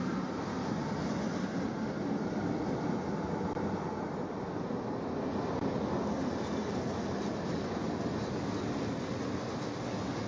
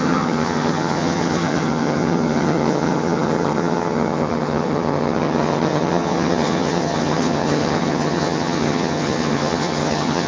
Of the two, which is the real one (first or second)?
first